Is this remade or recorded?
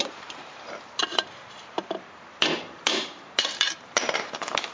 remade